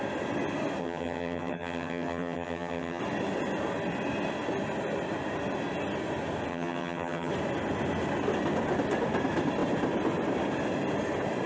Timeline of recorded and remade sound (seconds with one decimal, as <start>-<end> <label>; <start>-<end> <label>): 0.0-0.8 recorded; 0.8-3.0 remade; 3.0-6.5 recorded; 6.5-7.3 remade; 7.3-11.5 recorded